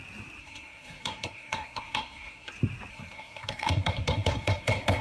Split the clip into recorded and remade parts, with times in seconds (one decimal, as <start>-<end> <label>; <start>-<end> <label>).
0.0-0.4 recorded; 0.4-2.5 remade; 2.5-2.9 recorded; 2.9-5.0 remade